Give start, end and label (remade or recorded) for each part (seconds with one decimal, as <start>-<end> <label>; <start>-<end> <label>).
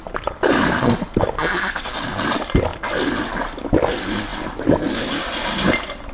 0.0-6.1 recorded